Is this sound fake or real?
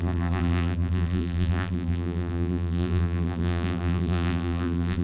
fake